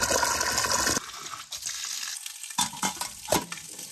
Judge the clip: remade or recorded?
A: recorded